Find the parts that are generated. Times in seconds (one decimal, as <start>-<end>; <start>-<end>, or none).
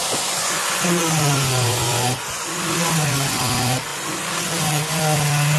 0.0-3.4; 3.9-5.0